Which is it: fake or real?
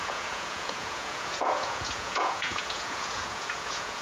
fake